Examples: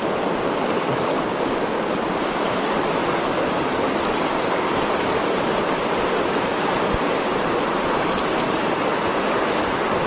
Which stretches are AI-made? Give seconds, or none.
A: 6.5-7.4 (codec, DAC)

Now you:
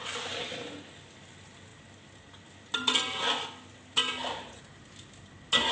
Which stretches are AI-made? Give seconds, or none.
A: none

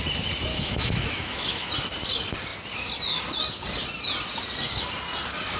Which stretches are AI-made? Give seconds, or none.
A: 0.5-1.7 (autoencoder, DAC-VAE)

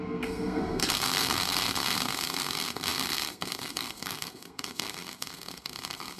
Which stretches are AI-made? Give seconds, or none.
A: 0.0-6.2 (codec, SNAC)